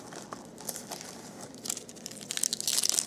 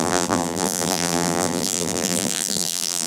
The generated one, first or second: second